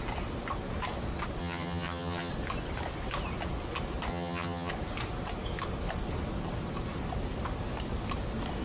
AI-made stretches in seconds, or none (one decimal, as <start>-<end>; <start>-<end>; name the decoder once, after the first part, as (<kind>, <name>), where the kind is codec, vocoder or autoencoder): 1.4-2.3 (vocoder, HiFi-GAN); 4.1-4.7